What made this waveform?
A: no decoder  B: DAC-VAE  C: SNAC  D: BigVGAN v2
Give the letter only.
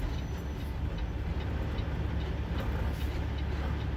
A